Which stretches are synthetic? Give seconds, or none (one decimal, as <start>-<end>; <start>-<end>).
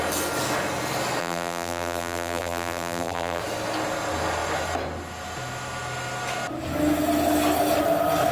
1.2-3.4